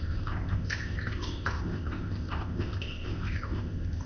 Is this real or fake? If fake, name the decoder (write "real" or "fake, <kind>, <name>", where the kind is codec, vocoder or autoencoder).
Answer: fake, codec, ZipCodec